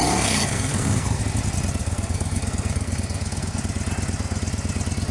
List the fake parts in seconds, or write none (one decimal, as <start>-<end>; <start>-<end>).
0.0-1.2; 1.8-3.6